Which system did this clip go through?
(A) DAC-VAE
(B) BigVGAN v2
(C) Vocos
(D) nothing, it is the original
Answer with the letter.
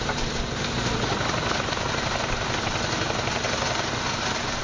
D